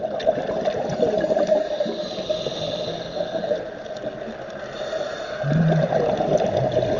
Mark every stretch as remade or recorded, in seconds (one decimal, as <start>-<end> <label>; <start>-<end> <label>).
0.0-3.1 recorded; 3.1-3.7 remade; 3.7-7.0 recorded